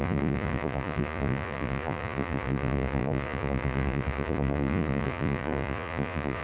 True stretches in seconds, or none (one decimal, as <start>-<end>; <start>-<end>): none